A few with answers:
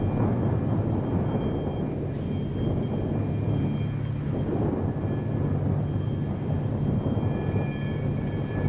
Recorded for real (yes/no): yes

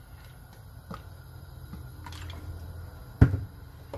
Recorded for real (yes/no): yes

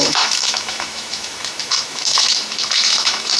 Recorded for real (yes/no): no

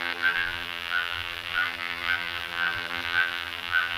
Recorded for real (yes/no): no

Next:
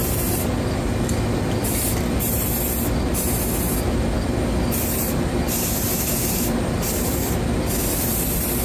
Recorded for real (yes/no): yes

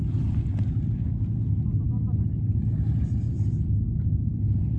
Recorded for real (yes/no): yes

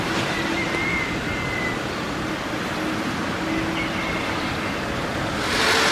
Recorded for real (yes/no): yes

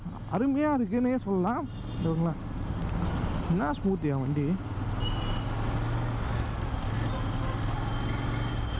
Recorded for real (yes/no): yes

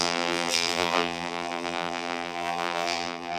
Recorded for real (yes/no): no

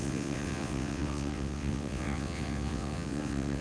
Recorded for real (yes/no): no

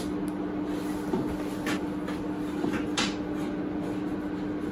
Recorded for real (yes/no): yes